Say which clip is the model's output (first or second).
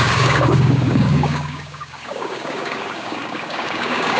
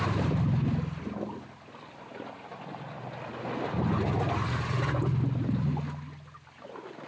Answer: first